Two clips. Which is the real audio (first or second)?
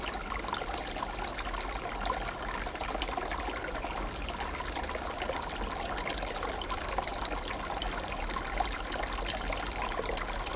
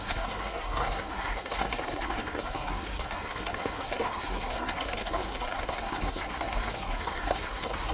first